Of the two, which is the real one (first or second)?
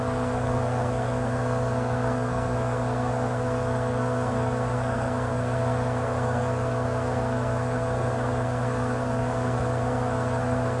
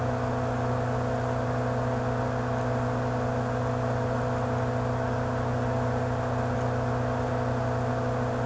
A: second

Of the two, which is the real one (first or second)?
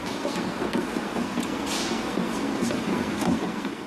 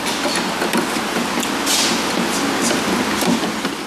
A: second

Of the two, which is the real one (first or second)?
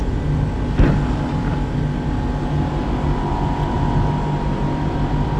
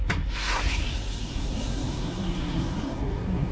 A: first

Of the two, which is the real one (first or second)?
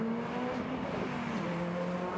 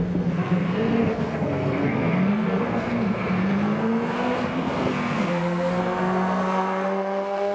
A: first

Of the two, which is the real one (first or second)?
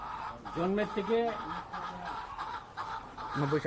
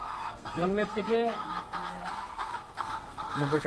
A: first